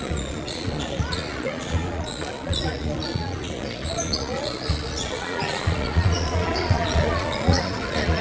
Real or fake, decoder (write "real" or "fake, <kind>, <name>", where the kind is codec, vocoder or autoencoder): fake, vocoder, Vocos